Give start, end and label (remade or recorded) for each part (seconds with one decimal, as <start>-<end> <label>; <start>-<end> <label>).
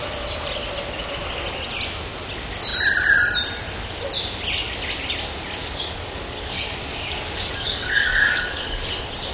0.0-5.6 recorded; 5.6-8.9 remade; 8.9-9.3 recorded